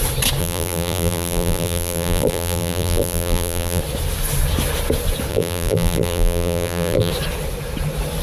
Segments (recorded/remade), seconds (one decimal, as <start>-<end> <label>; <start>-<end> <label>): 0.0-0.4 recorded; 0.4-3.8 remade; 3.8-5.3 recorded; 5.3-7.1 remade; 7.1-8.2 recorded